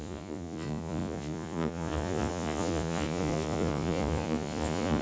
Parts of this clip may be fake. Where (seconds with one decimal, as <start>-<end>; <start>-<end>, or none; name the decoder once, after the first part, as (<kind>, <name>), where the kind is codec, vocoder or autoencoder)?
0.0-5.0 (vocoder, Vocos)